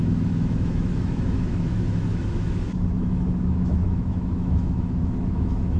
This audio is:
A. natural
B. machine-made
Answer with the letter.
B